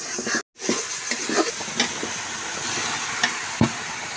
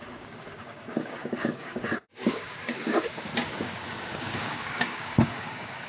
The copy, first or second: second